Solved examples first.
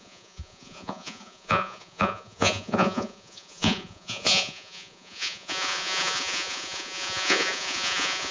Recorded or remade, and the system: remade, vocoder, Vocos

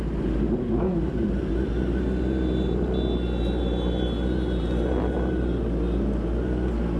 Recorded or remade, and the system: recorded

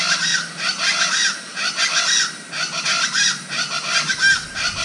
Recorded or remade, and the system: recorded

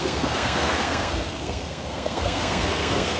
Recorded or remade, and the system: remade, codec, SNAC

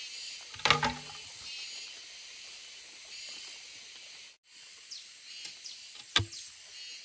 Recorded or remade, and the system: recorded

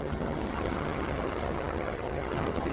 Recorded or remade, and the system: remade, vocoder, HiFi-GAN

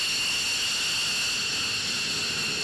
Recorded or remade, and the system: recorded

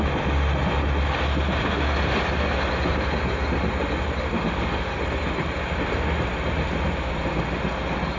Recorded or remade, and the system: recorded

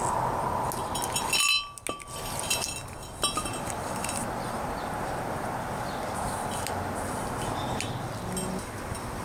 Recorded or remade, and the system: recorded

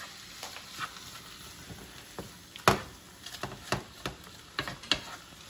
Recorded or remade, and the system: recorded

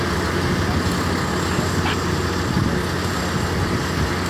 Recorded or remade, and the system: recorded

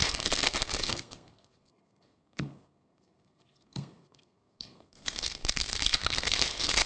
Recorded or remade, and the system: remade, codec, SNAC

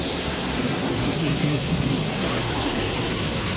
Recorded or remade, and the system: remade, codec, SNAC